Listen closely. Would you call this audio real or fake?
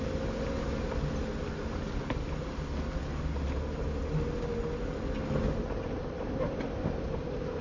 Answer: real